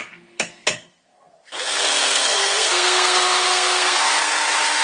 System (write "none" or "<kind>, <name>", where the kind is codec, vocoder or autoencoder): codec, SNAC